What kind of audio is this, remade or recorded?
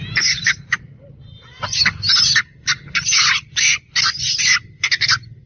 recorded